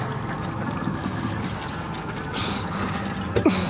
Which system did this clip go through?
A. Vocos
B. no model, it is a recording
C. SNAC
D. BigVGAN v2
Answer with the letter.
B